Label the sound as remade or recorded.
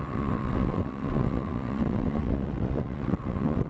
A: remade